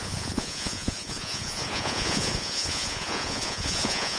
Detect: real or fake fake